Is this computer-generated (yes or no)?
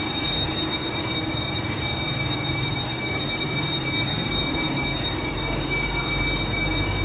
yes